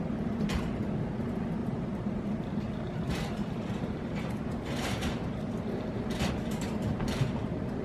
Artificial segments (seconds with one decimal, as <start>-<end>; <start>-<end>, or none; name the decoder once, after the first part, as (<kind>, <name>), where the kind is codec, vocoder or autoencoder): 1.6-6.3 (vocoder, BigVGAN v2)